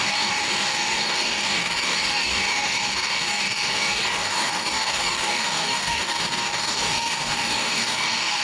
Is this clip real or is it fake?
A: fake